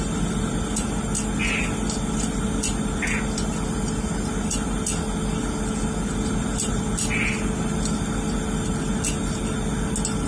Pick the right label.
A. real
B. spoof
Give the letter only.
A